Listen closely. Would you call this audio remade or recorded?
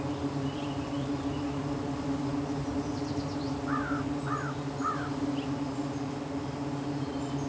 recorded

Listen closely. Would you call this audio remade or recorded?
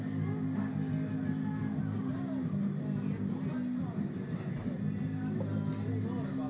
recorded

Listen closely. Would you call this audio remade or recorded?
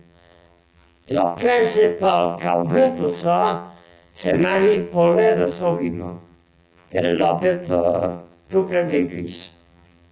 remade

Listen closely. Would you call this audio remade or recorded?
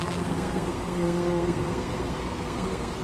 remade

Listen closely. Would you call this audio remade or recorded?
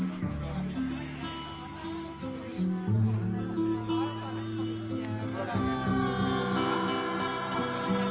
recorded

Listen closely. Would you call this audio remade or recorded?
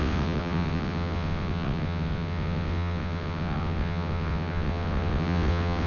remade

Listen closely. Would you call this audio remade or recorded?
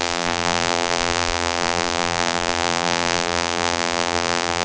remade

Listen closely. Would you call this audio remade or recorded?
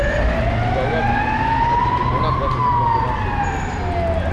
recorded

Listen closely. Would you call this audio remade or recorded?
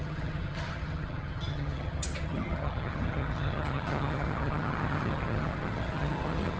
remade